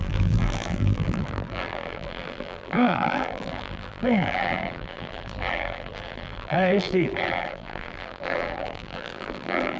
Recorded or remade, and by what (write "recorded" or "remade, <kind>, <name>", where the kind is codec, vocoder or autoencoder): remade, vocoder, BigVGAN v2